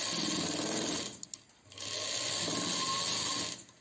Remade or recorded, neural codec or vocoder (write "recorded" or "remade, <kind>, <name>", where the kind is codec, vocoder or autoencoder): recorded